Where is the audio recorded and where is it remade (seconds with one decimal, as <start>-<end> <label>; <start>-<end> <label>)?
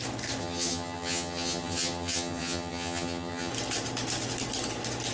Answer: 0.0-0.4 recorded; 0.4-3.5 remade; 3.5-5.1 recorded